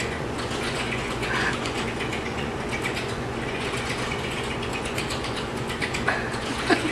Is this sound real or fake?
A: fake